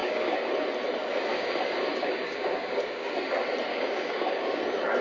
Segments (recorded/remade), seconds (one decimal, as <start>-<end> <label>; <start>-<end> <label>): 0.0-0.5 remade; 0.5-1.3 recorded; 1.3-3.1 remade; 3.1-3.7 recorded; 3.7-4.6 remade; 4.6-5.0 recorded